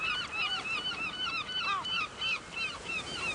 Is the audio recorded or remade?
remade